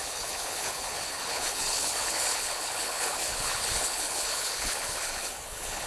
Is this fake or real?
fake